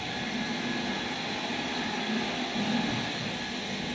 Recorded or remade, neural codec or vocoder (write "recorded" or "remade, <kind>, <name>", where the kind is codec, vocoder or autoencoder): recorded